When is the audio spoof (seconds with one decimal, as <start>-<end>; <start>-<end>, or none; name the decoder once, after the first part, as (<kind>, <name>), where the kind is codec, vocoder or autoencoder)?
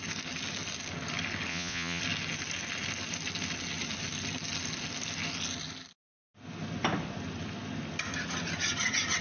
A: 1.5-2.0 (vocoder, Vocos)